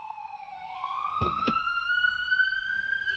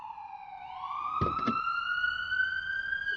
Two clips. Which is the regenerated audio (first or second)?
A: first